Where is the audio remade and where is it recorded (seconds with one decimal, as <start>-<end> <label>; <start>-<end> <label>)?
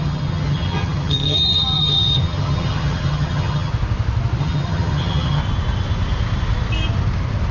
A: 0.0-3.7 remade; 3.7-4.4 recorded; 4.4-5.4 remade; 5.4-7.5 recorded